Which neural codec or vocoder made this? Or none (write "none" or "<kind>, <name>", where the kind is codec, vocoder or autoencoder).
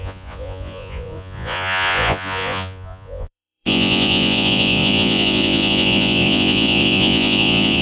vocoder, Vocos